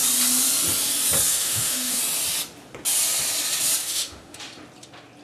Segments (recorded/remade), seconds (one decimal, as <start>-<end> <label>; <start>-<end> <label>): 0.0-1.3 recorded; 1.3-2.0 remade; 2.0-3.8 recorded; 3.8-4.4 remade; 4.4-5.2 recorded